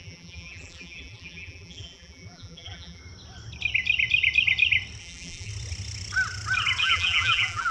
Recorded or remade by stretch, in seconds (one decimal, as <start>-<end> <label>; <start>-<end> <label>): 0.0-3.0 remade; 3.0-5.0 recorded; 5.0-5.5 remade; 5.5-6.8 recorded; 6.8-7.7 remade